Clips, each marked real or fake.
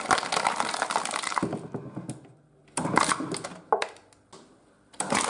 real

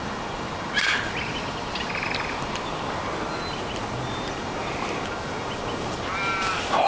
real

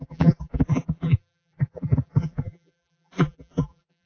fake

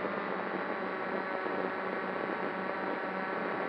real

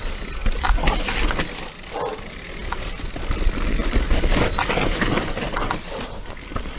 real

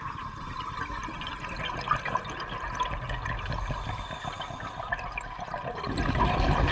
real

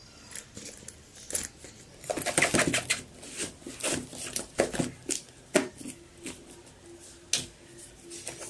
real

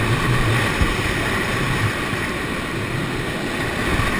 real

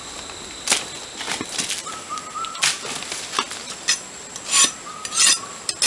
real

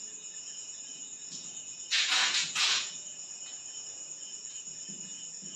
fake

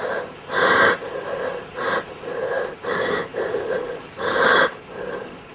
real